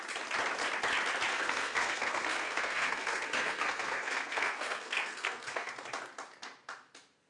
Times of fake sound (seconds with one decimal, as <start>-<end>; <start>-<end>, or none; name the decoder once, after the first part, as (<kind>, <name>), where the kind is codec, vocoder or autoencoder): 1.3-5.7 (codec, SNAC)